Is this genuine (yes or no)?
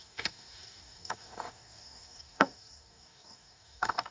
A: no